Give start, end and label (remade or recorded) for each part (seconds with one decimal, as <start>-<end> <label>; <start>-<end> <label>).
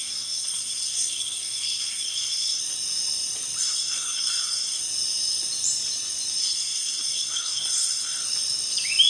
0.0-2.6 remade; 2.6-3.6 recorded; 3.6-4.8 remade; 4.8-6.4 recorded; 6.4-8.2 remade; 8.2-9.1 recorded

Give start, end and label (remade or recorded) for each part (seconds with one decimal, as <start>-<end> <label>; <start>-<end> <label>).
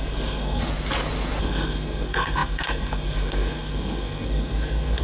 0.0-0.6 remade; 0.6-1.4 recorded; 1.4-5.0 remade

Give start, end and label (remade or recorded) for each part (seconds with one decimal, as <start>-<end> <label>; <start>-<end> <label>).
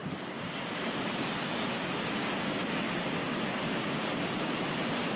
0.0-5.2 recorded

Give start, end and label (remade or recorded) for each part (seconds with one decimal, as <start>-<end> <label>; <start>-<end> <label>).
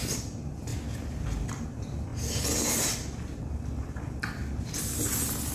0.0-5.5 recorded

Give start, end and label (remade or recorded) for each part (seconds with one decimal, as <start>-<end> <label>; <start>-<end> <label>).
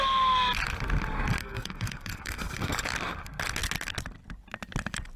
0.0-1.4 recorded; 1.4-2.8 remade; 2.8-5.2 recorded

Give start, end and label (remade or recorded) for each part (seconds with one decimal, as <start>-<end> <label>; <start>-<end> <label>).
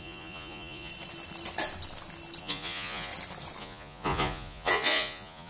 0.0-0.9 remade; 0.9-2.4 recorded; 2.4-3.1 remade; 3.1-3.6 recorded; 3.6-5.5 remade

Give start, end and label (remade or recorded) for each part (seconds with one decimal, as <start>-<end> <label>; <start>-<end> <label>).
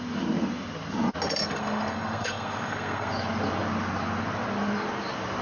0.0-1.4 recorded; 1.4-3.1 remade; 3.1-5.4 recorded